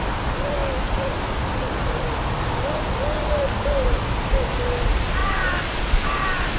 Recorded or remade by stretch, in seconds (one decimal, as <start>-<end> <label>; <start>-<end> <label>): 0.0-6.6 recorded